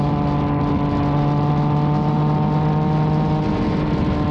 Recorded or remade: recorded